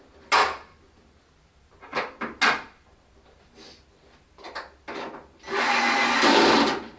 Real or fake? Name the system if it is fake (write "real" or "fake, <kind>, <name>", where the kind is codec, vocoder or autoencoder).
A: real